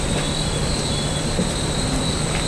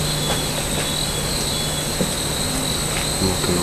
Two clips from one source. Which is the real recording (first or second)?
second